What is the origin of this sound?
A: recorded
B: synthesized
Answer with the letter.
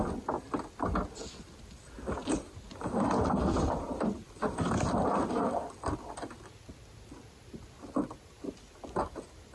A